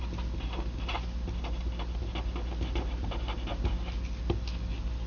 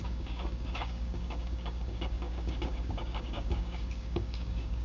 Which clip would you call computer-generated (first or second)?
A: second